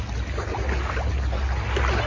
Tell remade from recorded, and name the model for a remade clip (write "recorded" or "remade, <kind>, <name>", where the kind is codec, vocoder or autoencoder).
recorded